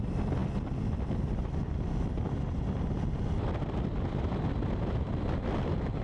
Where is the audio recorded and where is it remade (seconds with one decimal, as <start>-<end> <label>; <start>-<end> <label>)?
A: 0.0-6.0 recorded